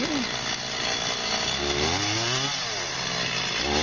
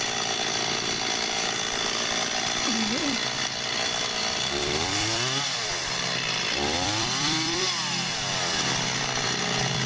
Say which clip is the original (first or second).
first